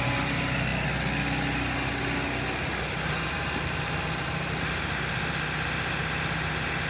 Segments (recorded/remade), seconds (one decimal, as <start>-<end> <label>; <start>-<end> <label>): 0.0-6.9 recorded